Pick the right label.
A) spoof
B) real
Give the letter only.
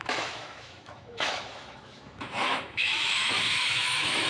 A